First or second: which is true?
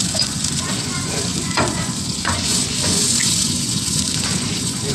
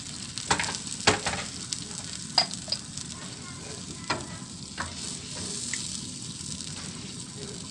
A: second